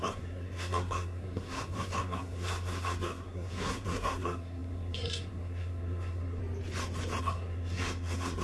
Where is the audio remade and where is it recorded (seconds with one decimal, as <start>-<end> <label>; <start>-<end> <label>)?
0.0-6.4 remade; 6.4-7.2 recorded; 7.2-8.4 remade